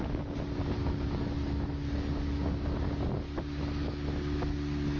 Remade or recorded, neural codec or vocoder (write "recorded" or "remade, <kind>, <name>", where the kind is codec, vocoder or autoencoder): recorded